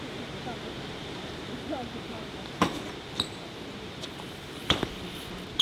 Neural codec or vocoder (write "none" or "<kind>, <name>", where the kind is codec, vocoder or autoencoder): vocoder, BigVGAN v2